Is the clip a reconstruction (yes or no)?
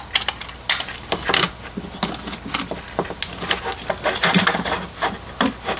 no